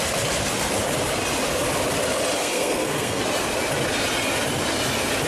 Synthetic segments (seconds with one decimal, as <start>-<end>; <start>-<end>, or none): 2.4-3.2